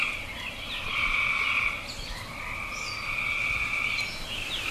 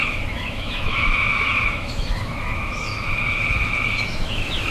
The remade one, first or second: second